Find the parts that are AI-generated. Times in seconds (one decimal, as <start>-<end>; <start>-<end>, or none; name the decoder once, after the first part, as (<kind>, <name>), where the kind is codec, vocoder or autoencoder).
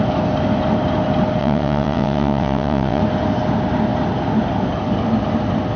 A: 1.4-3.0 (vocoder, WaveNeXt)